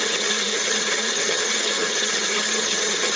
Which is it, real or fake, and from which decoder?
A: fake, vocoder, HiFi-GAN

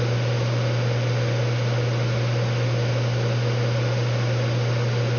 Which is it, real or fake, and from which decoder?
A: real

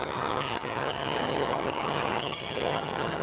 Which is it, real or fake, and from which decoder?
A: fake, vocoder, HiFi-GAN